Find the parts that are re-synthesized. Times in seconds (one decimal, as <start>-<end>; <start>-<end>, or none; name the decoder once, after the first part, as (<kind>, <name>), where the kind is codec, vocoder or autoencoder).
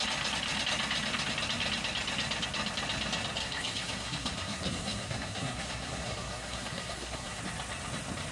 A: 3.4-7.4 (codec, SNAC)